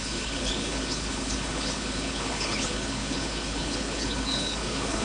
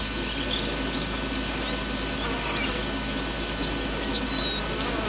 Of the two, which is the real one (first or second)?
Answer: second